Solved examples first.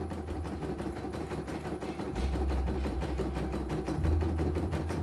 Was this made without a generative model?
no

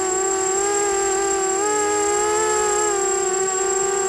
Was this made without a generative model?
yes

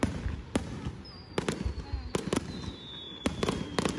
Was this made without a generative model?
yes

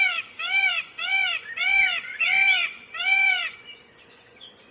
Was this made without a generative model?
no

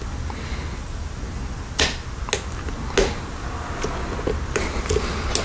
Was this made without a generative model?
yes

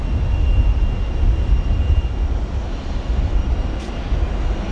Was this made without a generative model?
yes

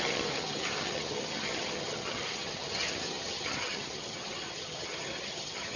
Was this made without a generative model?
no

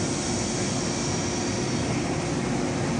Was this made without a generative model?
yes